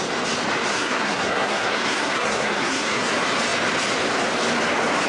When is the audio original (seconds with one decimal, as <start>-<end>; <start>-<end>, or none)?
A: 0.0-0.7; 3.1-5.1